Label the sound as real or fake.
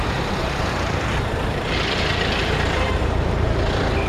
fake